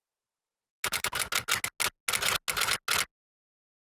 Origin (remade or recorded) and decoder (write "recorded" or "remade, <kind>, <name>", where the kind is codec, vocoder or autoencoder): recorded